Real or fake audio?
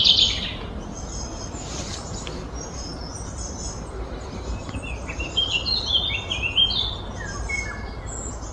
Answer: real